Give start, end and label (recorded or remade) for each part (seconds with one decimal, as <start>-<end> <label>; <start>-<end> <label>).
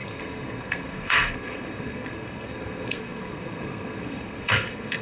0.0-5.0 remade